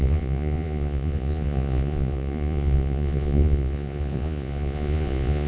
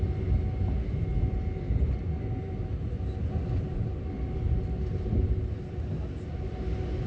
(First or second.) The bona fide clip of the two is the second